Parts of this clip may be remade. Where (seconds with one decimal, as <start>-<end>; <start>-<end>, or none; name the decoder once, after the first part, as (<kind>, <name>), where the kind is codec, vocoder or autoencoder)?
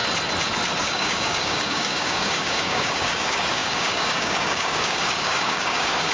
0.8-6.1 (codec, DAC)